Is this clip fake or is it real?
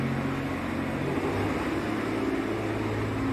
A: real